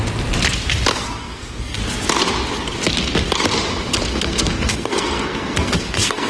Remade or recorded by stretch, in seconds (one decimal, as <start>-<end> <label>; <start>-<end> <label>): 0.0-0.9 recorded; 0.9-1.8 remade; 1.8-4.1 recorded; 4.1-6.3 remade